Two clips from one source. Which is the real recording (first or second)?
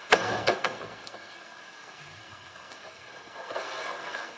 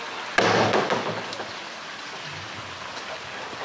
second